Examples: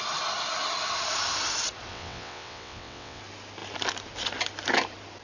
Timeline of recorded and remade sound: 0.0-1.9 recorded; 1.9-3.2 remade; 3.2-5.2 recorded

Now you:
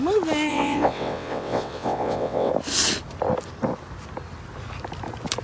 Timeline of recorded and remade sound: 0.0-0.5 recorded; 0.5-2.5 remade; 2.5-5.4 recorded

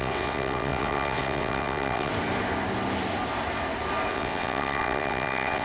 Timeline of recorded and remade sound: 0.0-2.1 remade; 2.1-4.1 recorded; 4.1-5.6 remade